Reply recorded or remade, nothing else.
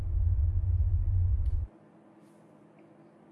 recorded